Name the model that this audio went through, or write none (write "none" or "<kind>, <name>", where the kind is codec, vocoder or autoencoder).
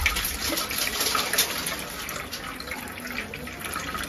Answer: none